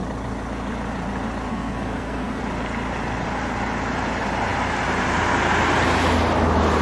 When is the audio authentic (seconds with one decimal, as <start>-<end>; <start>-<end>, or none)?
0.0-1.5; 2.4-6.8